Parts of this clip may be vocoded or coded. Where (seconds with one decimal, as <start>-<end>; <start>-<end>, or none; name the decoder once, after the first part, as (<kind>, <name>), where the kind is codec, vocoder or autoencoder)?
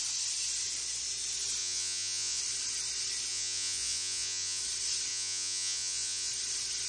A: 1.6-2.4 (vocoder, Vocos); 3.3-4.6; 5.1-6.3